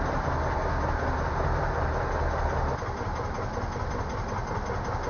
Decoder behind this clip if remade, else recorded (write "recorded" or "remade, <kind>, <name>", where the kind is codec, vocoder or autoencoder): recorded